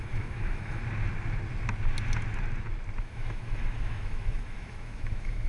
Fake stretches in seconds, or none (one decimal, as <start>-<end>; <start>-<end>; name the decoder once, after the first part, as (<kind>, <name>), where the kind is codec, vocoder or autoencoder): 0.0-0.8 (autoencoder, DAC-VAE); 3.0-5.5